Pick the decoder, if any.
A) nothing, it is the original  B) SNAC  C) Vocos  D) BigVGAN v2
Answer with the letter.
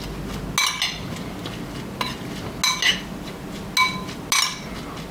A